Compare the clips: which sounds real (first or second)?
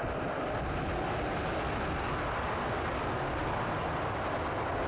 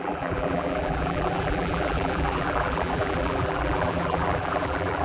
first